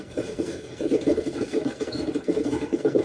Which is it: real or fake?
fake